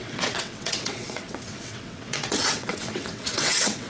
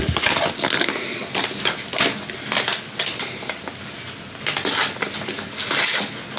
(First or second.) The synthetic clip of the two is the first